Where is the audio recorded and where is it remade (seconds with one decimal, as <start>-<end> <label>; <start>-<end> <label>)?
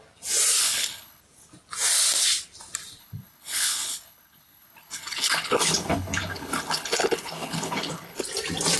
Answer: 0.0-0.6 recorded; 0.6-1.2 remade; 1.2-3.0 recorded; 3.0-8.2 remade; 8.2-8.8 recorded